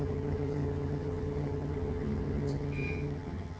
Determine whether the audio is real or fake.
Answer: fake